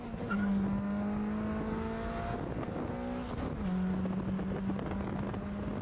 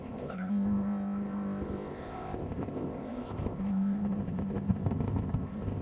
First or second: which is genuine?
first